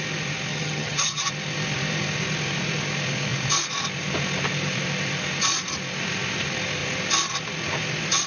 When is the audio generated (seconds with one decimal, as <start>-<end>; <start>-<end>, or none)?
0.5-1.3